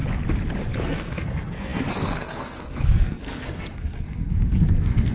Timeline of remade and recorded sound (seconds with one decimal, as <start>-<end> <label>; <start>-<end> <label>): 0.0-0.8 recorded; 0.8-5.1 remade